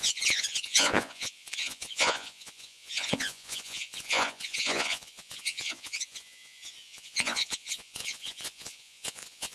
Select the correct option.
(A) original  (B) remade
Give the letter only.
B